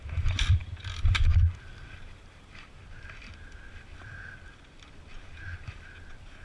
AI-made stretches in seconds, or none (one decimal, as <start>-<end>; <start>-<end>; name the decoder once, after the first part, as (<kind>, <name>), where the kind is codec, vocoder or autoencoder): 0.6-2.8 (vocoder, BigVGAN v2)